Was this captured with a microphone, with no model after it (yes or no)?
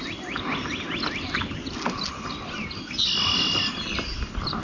yes